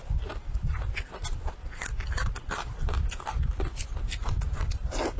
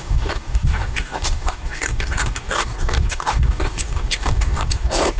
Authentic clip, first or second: first